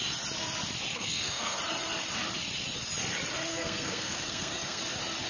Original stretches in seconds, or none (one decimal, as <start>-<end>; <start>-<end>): 0.0-0.9; 1.6-3.5; 4.8-5.3